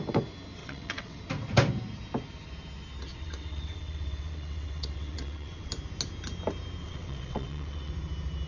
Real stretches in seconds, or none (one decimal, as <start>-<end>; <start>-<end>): 0.0-0.6; 1.2-3.1; 5.7-6.8; 7.9-8.5